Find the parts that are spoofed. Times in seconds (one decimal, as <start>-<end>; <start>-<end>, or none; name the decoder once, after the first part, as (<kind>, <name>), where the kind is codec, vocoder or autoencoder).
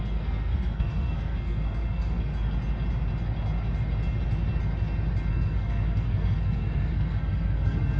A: 0.0-2.3 (codec, SNAC); 5.3-8.0